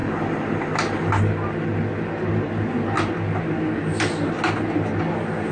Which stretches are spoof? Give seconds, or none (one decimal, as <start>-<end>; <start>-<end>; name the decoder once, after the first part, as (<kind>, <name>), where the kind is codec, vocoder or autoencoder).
none